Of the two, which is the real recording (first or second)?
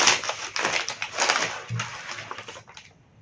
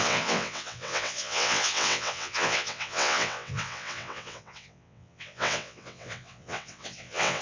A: first